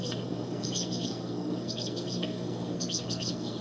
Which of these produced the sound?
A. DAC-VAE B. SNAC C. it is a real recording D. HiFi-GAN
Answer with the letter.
B